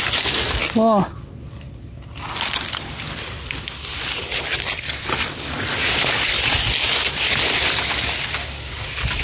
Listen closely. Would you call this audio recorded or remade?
recorded